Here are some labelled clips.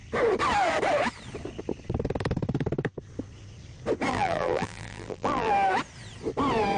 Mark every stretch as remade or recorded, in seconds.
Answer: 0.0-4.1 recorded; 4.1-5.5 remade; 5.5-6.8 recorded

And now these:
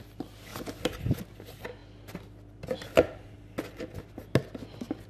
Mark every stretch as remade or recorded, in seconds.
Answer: 0.0-5.1 recorded